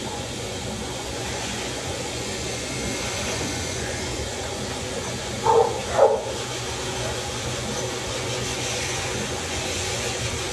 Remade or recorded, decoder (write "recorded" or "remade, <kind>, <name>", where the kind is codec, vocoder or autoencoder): remade, vocoder, Vocos